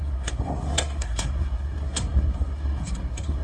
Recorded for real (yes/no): no